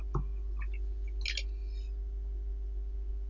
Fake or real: real